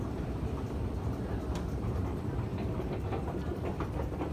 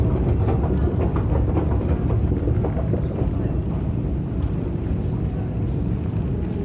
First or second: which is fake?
first